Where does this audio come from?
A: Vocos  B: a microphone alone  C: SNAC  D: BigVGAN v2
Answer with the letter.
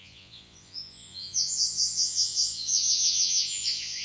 A